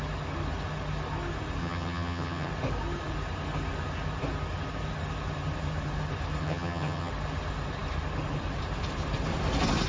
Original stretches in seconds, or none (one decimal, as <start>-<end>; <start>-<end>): 0.0-1.6; 2.5-6.4; 7.1-9.9